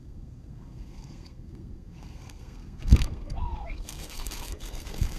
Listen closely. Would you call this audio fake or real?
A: fake